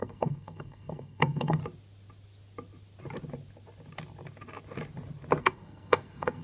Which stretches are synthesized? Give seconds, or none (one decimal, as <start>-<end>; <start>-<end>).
0.0-1.6; 5.4-6.4